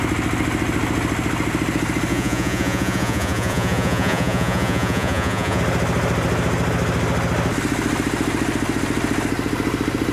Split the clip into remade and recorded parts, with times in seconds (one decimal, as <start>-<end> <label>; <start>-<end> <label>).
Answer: 0.0-2.1 recorded; 2.1-5.6 remade; 5.6-10.1 recorded